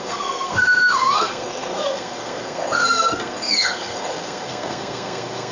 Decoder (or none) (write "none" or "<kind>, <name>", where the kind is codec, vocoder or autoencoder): codec, SNAC